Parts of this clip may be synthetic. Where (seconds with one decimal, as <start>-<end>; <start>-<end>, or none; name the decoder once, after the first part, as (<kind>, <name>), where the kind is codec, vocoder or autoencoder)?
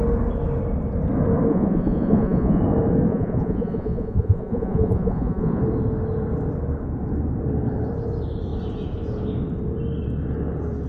1.5-2.6 (vocoder, Vocos); 3.1-5.6